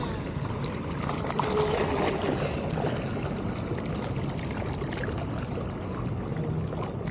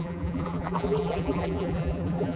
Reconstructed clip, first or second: second